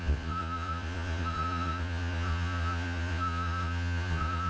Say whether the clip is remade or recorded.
remade